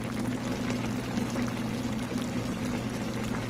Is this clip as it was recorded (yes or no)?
yes